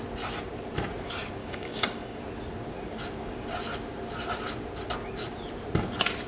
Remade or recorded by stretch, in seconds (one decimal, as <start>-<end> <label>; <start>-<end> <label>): 0.0-1.4 recorded; 1.4-2.2 remade; 2.2-6.3 recorded